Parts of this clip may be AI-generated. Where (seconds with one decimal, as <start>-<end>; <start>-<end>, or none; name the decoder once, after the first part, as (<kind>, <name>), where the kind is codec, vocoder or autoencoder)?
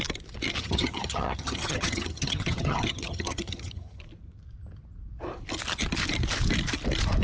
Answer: 0.6-4.0 (vocoder, HiFi-GAN)